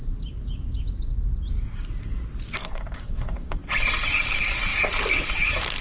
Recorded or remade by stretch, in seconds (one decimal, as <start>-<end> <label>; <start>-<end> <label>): 0.0-2.6 recorded; 2.6-3.6 remade; 3.6-5.8 recorded